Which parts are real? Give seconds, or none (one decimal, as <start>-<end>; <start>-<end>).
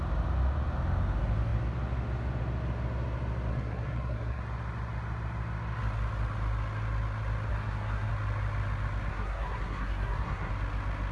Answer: 0.0-3.5; 4.4-7.5; 8.1-9.1; 10.5-11.1